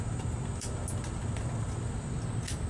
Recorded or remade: recorded